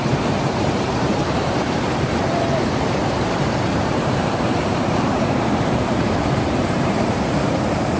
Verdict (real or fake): fake